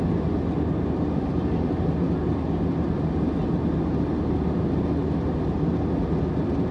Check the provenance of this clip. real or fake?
real